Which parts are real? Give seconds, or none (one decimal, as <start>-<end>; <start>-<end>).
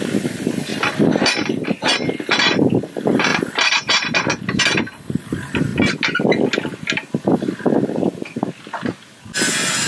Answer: 0.0-9.9